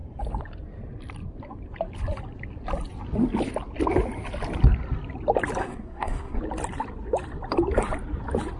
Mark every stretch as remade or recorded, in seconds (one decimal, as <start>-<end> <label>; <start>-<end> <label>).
0.0-5.6 recorded; 5.6-6.4 remade; 6.4-8.6 recorded